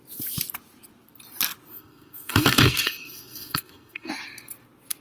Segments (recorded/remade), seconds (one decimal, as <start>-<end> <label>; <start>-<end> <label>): 0.0-1.7 recorded; 1.7-4.1 remade; 4.1-5.0 recorded